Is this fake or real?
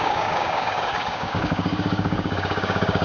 fake